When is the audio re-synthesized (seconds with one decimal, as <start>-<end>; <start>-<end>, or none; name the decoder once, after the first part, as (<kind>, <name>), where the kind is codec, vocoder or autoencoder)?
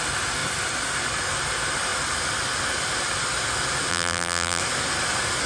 3.9-4.6 (vocoder, BigVGAN v2)